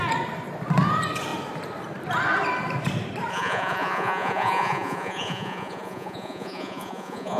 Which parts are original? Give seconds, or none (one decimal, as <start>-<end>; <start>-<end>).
0.0-3.3